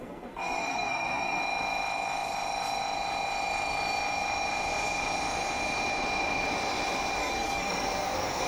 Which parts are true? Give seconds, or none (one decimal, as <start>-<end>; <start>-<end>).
1.4-7.2